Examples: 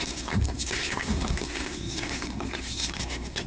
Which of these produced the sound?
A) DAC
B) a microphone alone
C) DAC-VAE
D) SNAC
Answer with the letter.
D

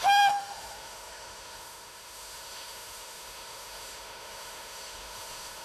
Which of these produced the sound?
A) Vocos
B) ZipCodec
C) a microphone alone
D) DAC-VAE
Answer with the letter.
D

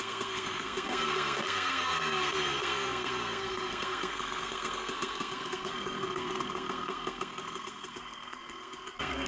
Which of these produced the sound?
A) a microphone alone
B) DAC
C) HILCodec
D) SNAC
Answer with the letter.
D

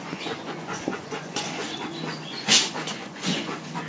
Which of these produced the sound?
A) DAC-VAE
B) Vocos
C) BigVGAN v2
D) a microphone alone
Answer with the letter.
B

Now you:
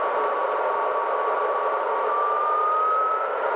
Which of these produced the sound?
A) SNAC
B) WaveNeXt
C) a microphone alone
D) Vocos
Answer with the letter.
C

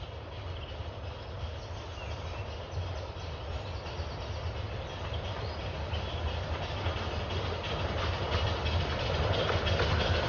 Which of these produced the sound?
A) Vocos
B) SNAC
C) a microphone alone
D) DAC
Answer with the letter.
C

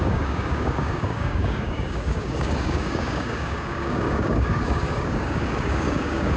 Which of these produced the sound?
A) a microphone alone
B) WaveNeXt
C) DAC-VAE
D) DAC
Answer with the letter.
D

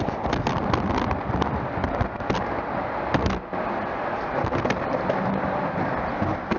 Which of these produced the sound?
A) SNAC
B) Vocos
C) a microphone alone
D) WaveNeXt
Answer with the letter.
C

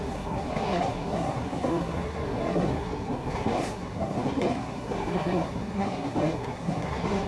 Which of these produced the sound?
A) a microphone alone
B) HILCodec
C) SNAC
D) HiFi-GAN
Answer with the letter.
C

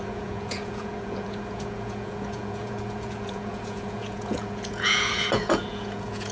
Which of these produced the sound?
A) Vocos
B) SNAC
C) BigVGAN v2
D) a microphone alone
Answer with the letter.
A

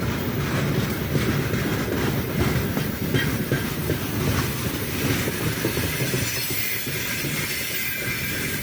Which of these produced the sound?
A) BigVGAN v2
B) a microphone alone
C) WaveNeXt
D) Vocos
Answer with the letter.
B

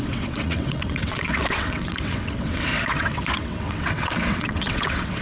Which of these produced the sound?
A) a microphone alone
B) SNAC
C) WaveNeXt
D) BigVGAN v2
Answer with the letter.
C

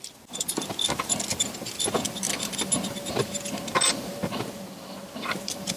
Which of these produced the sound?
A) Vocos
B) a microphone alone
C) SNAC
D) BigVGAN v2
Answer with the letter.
B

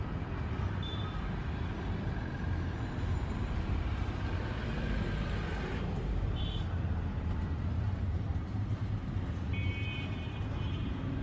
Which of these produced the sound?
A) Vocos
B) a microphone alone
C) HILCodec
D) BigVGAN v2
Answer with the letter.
D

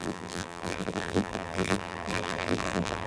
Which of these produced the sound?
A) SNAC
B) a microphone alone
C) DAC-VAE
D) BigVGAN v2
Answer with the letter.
D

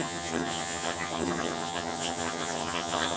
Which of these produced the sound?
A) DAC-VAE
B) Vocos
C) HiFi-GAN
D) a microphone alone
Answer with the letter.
C